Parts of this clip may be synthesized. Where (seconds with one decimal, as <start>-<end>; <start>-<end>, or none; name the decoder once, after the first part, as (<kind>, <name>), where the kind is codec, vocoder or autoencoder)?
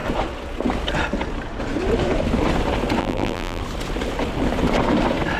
3.0-3.6 (vocoder, BigVGAN v2)